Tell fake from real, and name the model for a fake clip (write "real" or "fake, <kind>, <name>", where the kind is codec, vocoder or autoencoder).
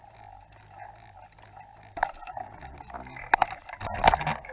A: real